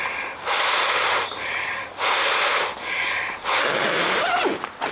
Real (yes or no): yes